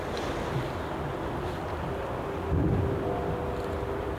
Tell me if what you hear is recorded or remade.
recorded